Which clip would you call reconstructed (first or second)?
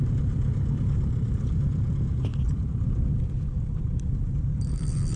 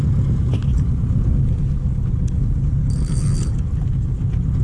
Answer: first